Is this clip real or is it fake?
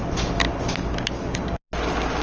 real